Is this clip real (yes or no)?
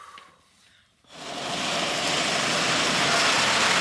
yes